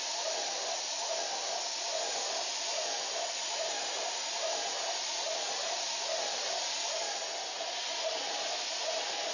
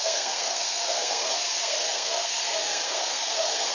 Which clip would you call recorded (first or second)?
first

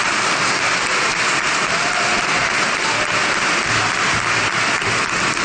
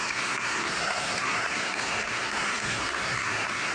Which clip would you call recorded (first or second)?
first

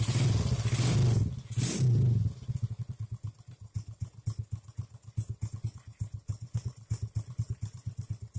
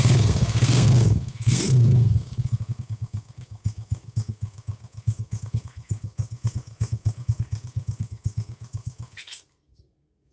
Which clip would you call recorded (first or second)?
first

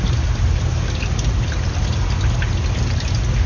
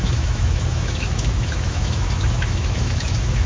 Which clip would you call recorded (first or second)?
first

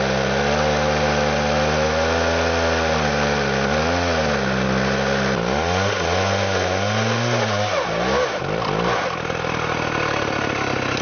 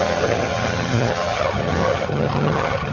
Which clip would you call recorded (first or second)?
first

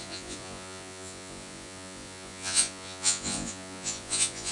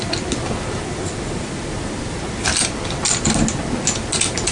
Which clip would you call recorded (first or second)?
second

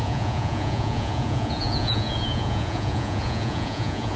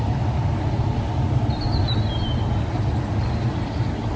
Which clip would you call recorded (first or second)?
second